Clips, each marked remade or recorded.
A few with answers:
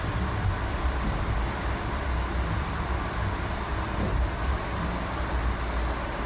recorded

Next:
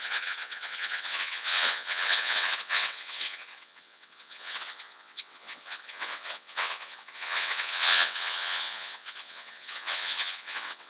remade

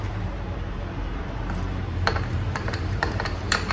remade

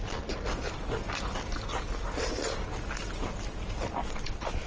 recorded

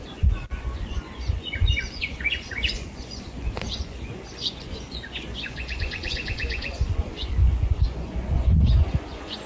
remade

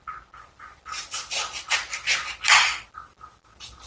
recorded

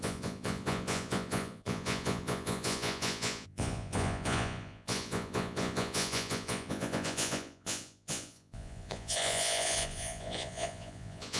remade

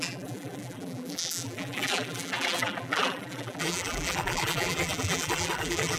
remade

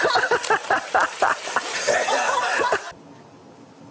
recorded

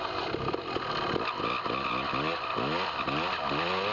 recorded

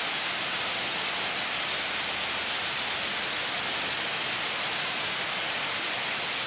recorded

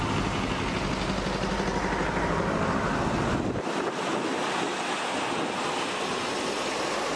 recorded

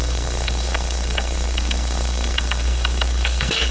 remade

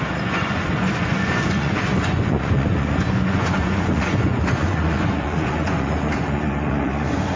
remade